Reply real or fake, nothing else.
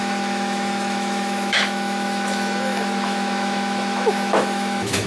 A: fake